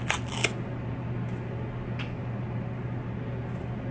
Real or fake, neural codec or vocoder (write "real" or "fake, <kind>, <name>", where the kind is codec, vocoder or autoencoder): real